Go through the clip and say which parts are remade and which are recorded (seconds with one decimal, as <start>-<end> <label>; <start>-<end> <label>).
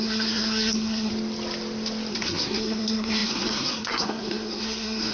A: 0.0-1.1 remade; 1.1-2.1 recorded; 2.1-5.1 remade